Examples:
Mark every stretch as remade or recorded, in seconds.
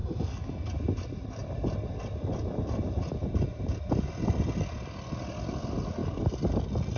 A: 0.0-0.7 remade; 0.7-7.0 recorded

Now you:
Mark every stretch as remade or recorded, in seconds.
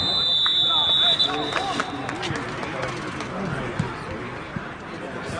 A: 0.0-5.4 recorded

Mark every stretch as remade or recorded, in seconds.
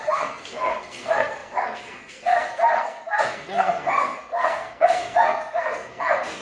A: 0.0-6.4 remade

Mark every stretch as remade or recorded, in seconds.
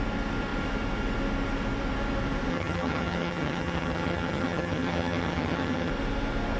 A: 0.0-2.5 recorded; 2.5-5.9 remade; 5.9-6.6 recorded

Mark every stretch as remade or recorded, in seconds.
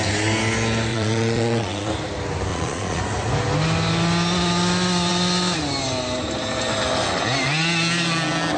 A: 0.0-0.9 recorded; 0.9-1.9 remade; 1.9-2.5 recorded; 2.5-3.0 remade; 3.0-8.6 recorded